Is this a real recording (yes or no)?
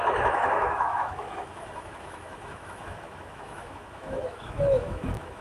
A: no